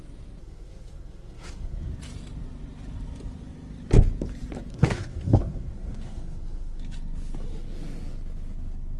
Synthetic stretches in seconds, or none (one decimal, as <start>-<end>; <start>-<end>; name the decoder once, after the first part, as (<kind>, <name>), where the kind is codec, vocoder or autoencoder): 0.4-1.9 (codec, SNAC); 4.7-6.8